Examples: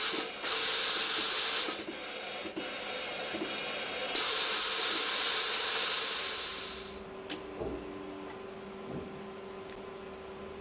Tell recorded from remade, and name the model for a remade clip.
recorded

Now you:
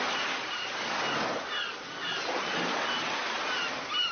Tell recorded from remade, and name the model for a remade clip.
recorded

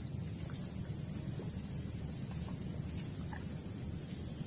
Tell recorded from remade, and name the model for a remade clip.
recorded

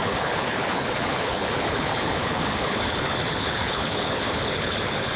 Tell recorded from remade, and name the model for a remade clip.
remade, codec, HILCodec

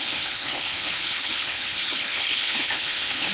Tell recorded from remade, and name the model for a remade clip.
remade, codec, HILCodec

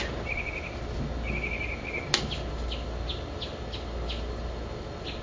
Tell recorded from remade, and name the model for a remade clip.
recorded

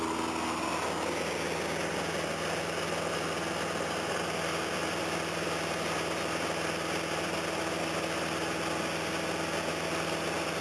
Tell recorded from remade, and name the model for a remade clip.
recorded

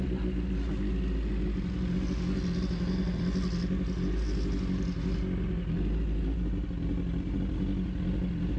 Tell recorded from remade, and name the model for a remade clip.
recorded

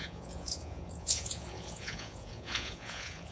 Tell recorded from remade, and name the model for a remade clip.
remade, vocoder, Vocos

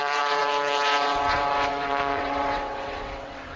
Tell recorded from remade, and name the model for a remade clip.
remade, vocoder, WaveNeXt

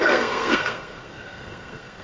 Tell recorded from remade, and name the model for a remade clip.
remade, codec, SNAC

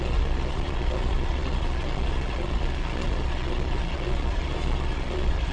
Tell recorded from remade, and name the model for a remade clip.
remade, vocoder, Vocos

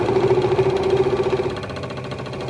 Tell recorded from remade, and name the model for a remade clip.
recorded